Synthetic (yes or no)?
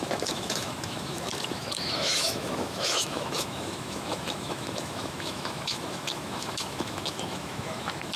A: yes